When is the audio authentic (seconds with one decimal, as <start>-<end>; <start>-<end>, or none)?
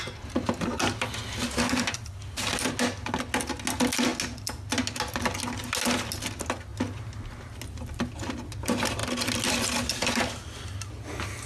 0.0-11.5